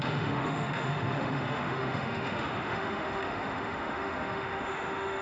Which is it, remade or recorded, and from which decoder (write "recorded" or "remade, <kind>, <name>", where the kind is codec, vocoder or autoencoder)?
remade, autoencoder, DAC-VAE